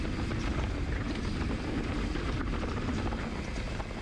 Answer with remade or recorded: recorded